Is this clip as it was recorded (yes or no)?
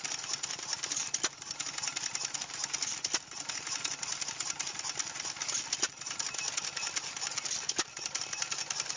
yes